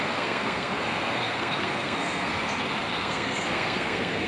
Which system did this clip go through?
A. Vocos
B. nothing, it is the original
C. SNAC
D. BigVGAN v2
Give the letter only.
C